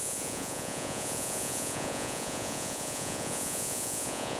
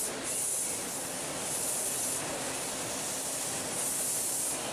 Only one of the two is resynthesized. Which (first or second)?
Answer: first